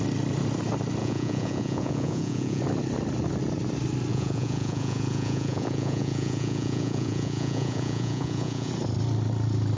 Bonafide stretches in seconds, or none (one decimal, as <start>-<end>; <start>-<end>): 0.0-1.0; 2.6-4.1; 8.7-9.8